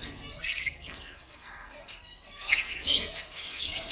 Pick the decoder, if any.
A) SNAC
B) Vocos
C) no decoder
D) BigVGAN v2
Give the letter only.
A